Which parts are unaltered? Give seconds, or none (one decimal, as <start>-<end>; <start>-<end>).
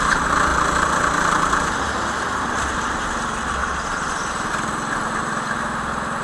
0.0-6.2